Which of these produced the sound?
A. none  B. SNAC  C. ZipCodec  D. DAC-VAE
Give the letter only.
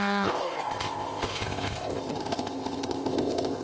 C